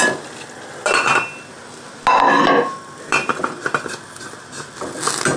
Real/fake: real